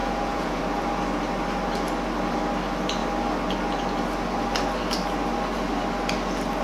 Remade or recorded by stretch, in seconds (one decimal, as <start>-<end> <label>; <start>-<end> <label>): 0.0-0.6 remade; 0.6-6.6 recorded